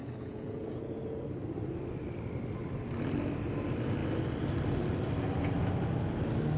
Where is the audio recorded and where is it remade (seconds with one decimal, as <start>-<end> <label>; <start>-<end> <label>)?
0.0-1.2 remade; 1.2-6.6 recorded